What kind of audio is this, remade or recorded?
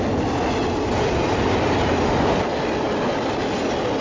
recorded